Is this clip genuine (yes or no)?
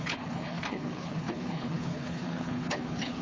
no